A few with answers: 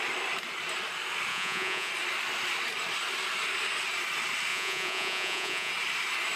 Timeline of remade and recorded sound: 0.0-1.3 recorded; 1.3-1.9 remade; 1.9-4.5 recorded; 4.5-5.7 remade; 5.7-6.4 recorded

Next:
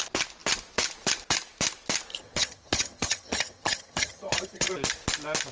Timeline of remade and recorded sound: 0.0-2.2 recorded; 2.2-4.7 remade; 4.7-5.5 recorded

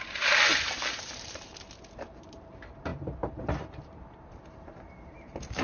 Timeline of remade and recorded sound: 0.0-5.6 remade

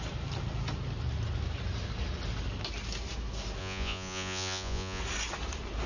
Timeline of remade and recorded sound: 0.0-3.6 recorded; 3.6-5.0 remade; 5.0-5.9 recorded

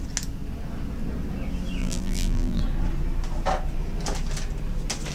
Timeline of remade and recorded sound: 0.0-1.8 recorded; 1.8-2.6 remade; 2.6-5.1 recorded

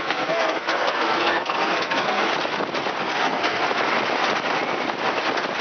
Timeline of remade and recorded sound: 0.0-2.3 remade; 2.3-3.0 recorded; 3.0-3.6 remade; 3.6-5.6 recorded

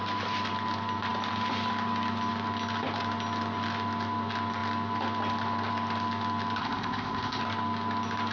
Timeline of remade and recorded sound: 0.0-6.6 recorded; 6.6-7.4 remade; 7.4-8.3 recorded